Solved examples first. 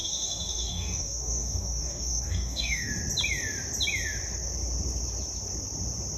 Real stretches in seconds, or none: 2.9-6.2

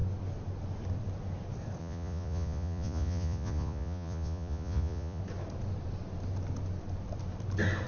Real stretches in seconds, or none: 0.0-1.8; 5.2-7.9

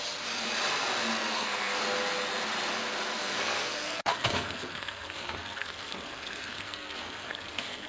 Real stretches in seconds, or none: 0.0-1.3; 1.8-3.2